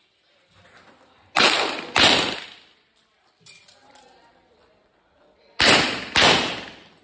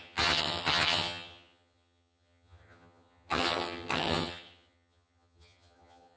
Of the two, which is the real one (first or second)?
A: first